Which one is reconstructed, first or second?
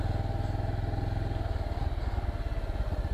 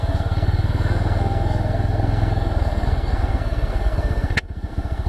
second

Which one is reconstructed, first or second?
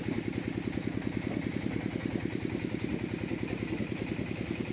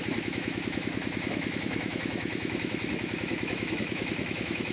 second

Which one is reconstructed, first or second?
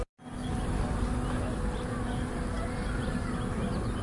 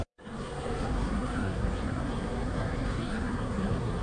second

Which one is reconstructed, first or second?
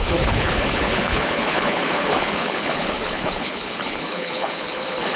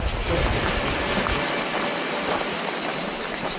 first